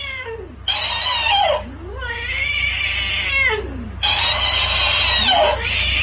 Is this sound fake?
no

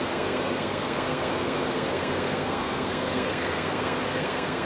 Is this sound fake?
yes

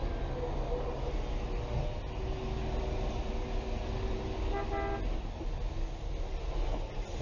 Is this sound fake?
no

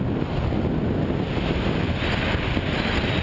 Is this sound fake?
no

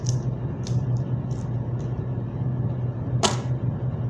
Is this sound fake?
no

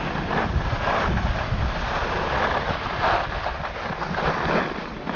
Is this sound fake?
no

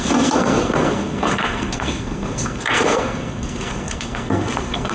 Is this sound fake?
yes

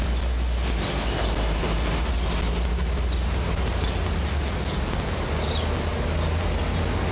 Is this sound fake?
no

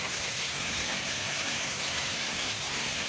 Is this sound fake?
yes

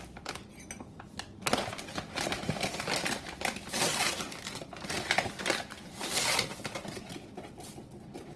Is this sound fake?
no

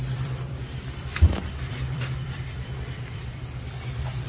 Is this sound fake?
yes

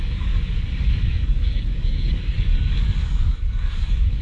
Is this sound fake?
yes